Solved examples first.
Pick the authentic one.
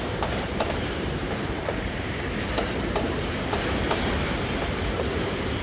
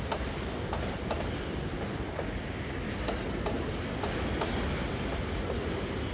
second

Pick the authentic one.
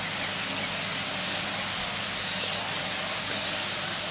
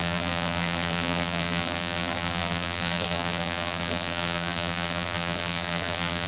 first